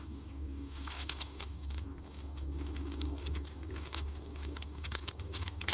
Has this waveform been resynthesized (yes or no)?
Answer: yes